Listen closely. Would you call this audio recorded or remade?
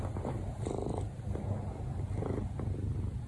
recorded